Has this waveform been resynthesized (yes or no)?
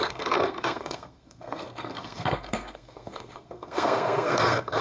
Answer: yes